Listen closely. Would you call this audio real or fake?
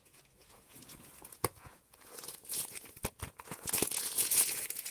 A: fake